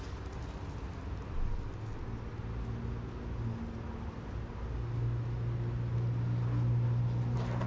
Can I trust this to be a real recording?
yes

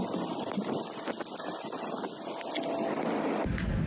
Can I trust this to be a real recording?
yes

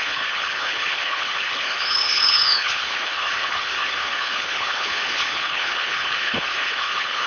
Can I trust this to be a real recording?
no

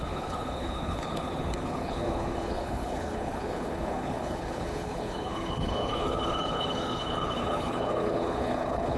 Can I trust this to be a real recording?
no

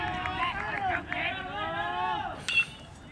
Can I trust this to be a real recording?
yes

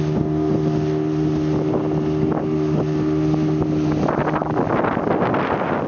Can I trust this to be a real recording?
yes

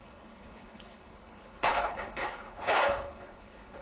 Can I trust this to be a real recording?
no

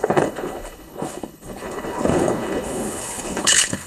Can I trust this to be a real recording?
no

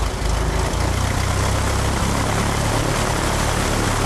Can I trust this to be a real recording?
yes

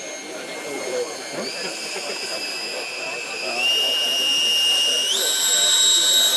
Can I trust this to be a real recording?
yes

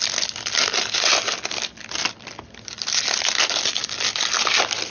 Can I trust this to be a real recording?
yes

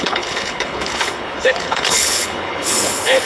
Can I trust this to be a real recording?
no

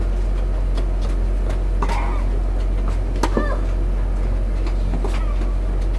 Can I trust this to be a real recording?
yes